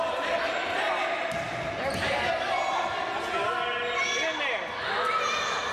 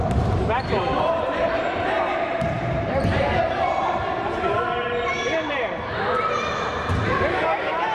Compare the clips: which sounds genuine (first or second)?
first